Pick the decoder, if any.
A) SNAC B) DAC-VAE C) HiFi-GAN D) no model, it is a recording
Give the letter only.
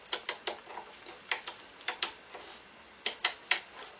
D